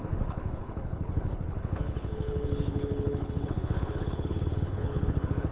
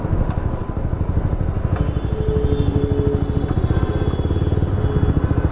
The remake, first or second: first